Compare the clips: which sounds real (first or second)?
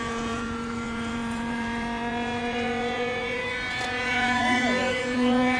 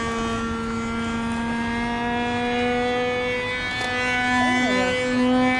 second